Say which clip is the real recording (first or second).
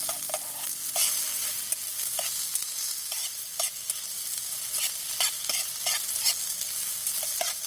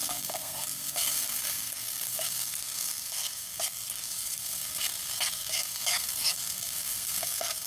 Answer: first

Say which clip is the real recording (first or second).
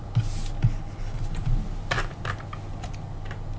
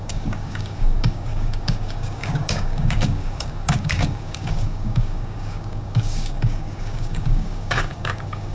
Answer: first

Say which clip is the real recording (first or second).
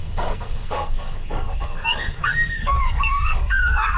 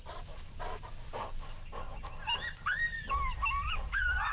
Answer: second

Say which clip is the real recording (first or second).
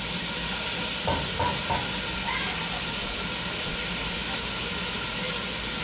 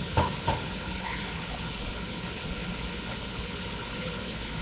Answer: first